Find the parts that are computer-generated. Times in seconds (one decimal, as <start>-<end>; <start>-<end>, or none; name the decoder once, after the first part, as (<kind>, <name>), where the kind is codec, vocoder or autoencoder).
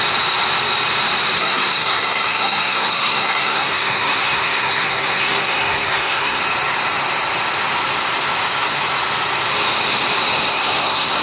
1.4-6.4 (codec, SNAC); 10.5-11.2